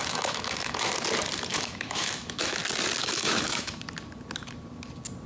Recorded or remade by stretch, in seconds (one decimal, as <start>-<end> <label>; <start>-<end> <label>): 0.0-0.9 remade; 0.9-1.5 recorded; 1.5-2.6 remade; 2.6-3.0 recorded; 3.0-3.8 remade; 3.8-5.3 recorded